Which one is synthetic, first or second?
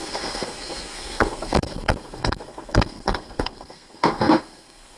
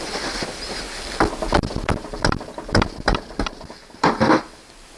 first